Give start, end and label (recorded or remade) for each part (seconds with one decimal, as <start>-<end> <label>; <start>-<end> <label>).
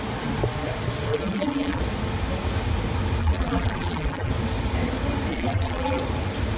0.0-1.1 recorded; 1.1-1.8 remade; 1.8-3.2 recorded; 3.2-4.3 remade; 4.3-5.3 recorded; 5.3-6.0 remade; 6.0-6.6 recorded